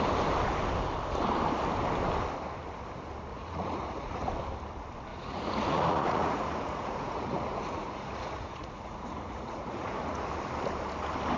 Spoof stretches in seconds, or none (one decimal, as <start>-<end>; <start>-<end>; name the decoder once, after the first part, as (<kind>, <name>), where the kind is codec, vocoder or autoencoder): 3.3-4.3 (vocoder, Vocos); 5.1-10.3